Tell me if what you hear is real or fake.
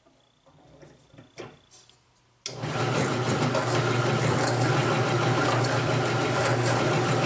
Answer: real